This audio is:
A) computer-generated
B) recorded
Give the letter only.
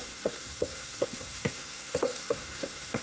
A